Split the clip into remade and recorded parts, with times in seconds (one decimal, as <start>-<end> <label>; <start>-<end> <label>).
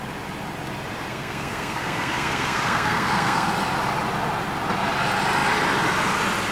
0.0-1.1 recorded; 1.1-3.5 remade; 3.5-6.5 recorded